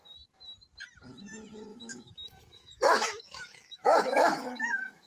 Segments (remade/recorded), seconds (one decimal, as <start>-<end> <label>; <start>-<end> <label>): 0.0-1.7 recorded; 1.7-5.1 remade

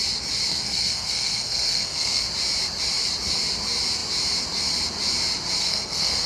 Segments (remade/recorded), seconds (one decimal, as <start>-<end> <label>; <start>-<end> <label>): 0.0-0.5 recorded; 0.5-2.2 remade; 2.2-5.6 recorded; 5.6-6.3 remade

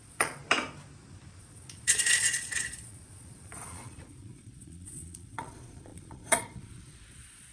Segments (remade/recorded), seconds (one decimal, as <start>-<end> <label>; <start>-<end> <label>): 0.0-0.4 remade; 0.4-1.4 recorded; 1.4-7.5 remade

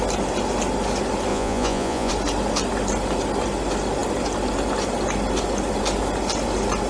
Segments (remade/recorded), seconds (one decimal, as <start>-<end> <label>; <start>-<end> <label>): 0.0-1.3 recorded; 1.3-2.1 remade; 2.1-6.9 recorded

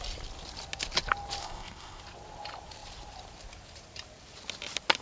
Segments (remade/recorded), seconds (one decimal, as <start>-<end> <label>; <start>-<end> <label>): 0.0-1.4 recorded; 1.4-2.0 remade; 2.0-5.0 recorded

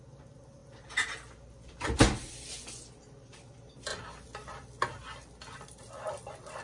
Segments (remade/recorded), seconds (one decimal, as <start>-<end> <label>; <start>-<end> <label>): 0.0-6.6 recorded